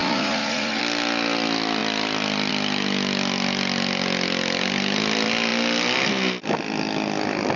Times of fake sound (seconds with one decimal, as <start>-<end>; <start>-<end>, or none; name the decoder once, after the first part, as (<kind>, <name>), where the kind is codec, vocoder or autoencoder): 0.0-0.8 (vocoder, Vocos)